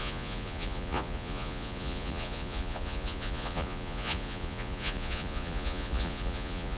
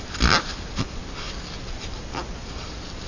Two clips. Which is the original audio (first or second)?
second